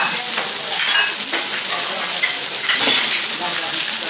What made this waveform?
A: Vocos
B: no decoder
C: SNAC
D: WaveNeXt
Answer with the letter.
B